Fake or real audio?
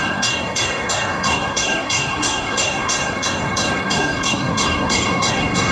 fake